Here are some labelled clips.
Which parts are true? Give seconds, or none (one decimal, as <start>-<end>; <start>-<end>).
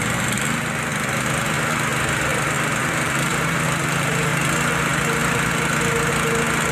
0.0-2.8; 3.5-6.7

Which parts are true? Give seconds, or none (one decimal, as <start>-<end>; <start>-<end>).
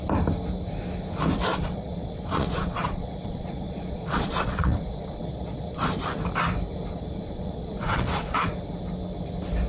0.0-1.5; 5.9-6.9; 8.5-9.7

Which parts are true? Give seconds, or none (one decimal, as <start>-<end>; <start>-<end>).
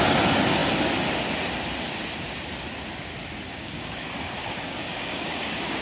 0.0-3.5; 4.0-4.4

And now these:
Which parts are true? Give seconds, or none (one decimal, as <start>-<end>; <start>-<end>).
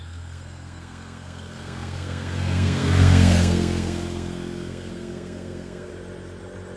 5.9-6.8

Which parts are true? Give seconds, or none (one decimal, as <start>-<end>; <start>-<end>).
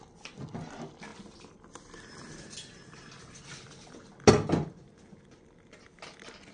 0.0-6.5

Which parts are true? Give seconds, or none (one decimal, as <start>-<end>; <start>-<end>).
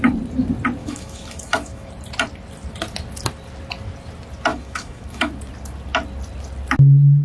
0.0-0.8; 1.9-4.5; 5.3-7.2